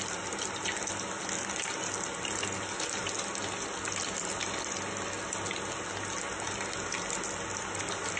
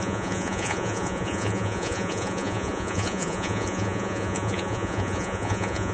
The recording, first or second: first